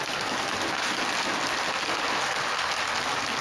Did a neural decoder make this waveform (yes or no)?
no